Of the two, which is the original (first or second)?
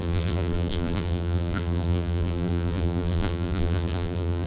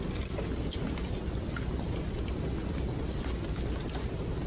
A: second